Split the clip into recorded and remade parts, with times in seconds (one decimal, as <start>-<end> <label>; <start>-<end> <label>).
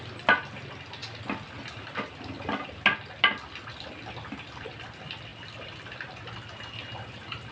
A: 0.0-7.5 recorded